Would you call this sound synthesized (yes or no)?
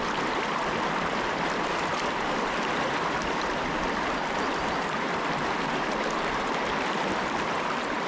no